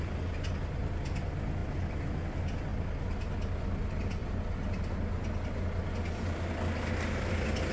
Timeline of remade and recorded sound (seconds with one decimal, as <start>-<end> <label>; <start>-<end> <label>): 0.0-7.7 recorded